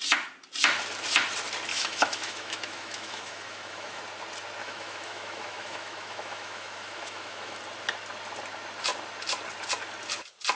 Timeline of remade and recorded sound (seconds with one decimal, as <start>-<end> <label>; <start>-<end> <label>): 0.0-1.7 recorded; 1.7-4.0 remade; 4.0-4.6 recorded; 4.6-7.6 remade; 7.6-10.6 recorded